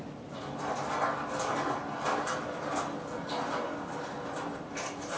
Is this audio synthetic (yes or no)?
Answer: no